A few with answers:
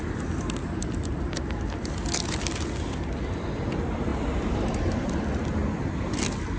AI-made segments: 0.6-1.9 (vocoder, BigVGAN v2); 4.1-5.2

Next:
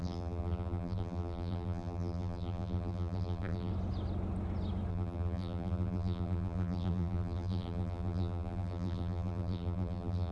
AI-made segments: 0.0-3.7 (vocoder, BigVGAN v2); 4.9-10.3

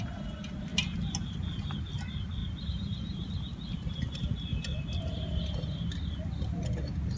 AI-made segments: 2.4-3.3 (vocoder, BigVGAN v2)

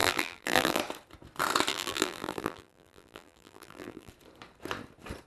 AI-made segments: 0.0-0.8 (vocoder, BigVGAN v2); 1.7-4.1